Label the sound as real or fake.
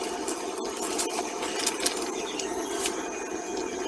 real